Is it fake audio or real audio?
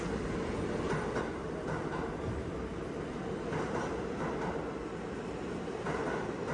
real